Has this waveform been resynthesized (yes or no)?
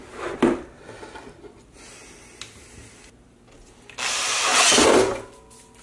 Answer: no